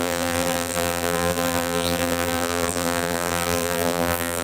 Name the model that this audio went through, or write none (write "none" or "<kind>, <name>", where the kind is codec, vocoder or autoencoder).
vocoder, BigVGAN v2